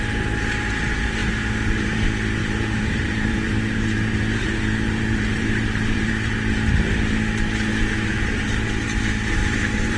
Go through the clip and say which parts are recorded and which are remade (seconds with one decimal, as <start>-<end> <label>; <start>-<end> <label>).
0.0-2.4 recorded; 2.4-6.1 remade; 6.1-7.7 recorded; 7.7-8.7 remade; 8.7-9.4 recorded; 9.4-10.0 remade